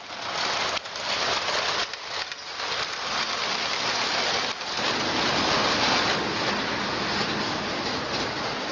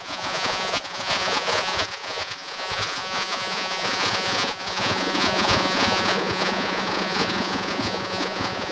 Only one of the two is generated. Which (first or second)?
second